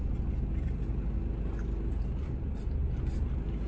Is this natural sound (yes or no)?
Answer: yes